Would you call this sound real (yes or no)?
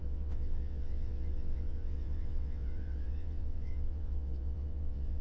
no